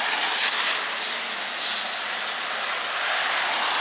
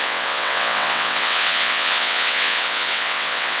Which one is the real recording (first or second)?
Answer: first